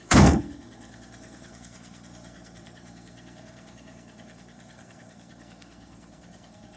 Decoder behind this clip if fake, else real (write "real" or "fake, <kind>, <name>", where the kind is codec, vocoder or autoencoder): fake, codec, SNAC